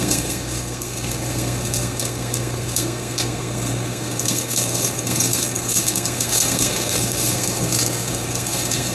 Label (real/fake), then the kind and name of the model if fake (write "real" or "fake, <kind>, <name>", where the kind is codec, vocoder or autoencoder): fake, codec, SNAC